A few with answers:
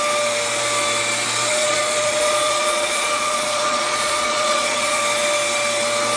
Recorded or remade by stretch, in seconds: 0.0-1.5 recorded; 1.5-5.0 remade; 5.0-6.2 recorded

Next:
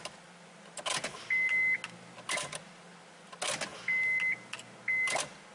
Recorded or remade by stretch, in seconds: 0.0-5.5 recorded

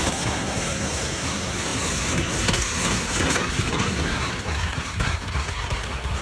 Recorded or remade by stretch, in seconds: 0.0-6.2 remade

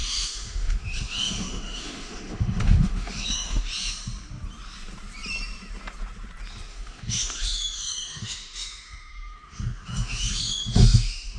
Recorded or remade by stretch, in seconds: 0.0-3.7 remade; 3.7-6.7 recorded; 6.7-11.4 remade

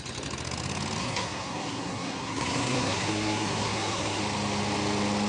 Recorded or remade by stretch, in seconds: 0.0-1.0 recorded; 1.0-4.2 remade; 4.2-5.3 recorded

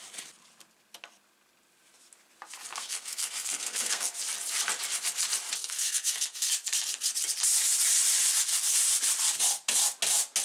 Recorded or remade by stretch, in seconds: 0.0-2.7 recorded; 2.7-4.2 remade; 4.2-5.6 recorded; 5.6-6.5 remade; 6.5-10.4 recorded

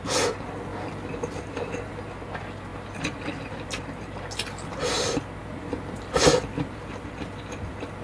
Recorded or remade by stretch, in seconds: 0.0-0.7 recorded; 0.7-1.7 remade; 1.7-5.4 recorded; 5.4-7.1 remade; 7.1-8.0 recorded